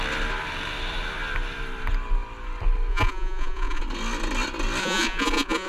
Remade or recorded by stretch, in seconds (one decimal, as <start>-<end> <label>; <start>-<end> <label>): 0.0-2.9 recorded; 2.9-3.8 remade; 3.8-4.8 recorded; 4.8-5.7 remade